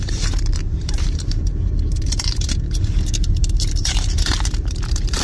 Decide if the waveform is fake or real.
fake